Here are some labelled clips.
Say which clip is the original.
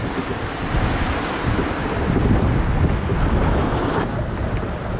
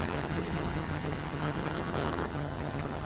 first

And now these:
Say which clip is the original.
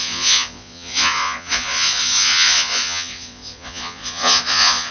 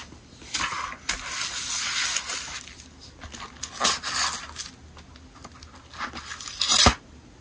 second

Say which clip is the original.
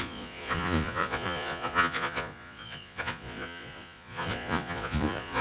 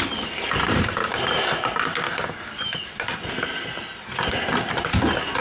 second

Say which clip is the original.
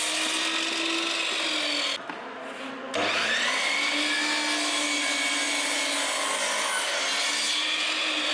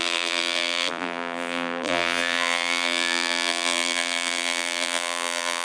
first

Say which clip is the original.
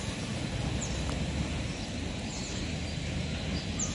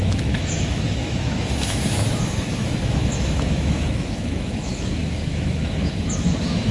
first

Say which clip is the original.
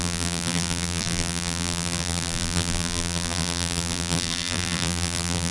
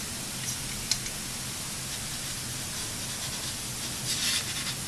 second